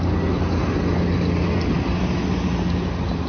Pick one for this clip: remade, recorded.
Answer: recorded